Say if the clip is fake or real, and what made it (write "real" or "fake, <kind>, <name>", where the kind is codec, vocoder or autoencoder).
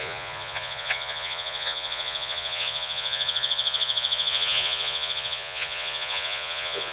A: fake, vocoder, Vocos